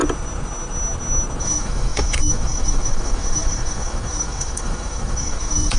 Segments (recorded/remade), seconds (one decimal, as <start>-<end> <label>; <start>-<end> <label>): 0.0-1.4 recorded; 1.4-5.8 remade